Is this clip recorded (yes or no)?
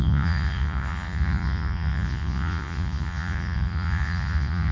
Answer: no